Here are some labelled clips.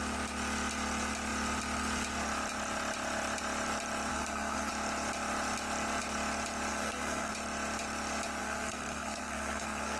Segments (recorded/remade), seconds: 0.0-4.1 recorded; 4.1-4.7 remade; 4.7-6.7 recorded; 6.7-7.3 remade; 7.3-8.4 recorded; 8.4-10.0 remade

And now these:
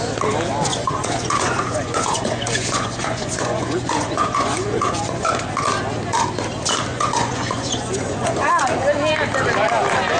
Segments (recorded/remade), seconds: 0.0-0.7 recorded; 0.7-5.4 remade; 5.4-6.9 recorded; 6.9-8.5 remade; 8.5-10.2 recorded

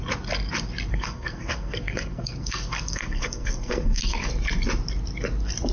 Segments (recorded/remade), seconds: 0.0-0.9 recorded; 0.9-4.3 remade; 4.3-5.7 recorded

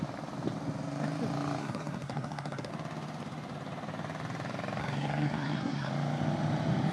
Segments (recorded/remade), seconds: 0.0-1.6 recorded; 1.6-2.7 remade; 2.7-4.8 recorded; 4.8-5.9 remade; 5.9-6.9 recorded

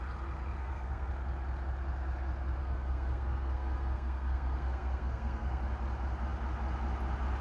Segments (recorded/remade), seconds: 0.0-0.6 recorded; 0.6-1.1 remade; 1.1-2.6 recorded; 2.6-5.6 remade; 5.6-7.4 recorded

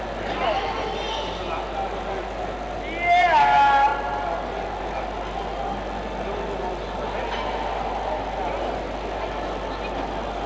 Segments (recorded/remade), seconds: 0.0-10.5 recorded

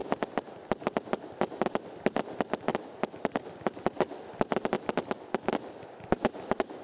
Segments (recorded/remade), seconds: 0.0-6.8 recorded

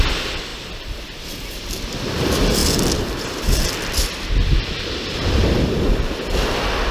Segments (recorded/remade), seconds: 0.0-6.9 recorded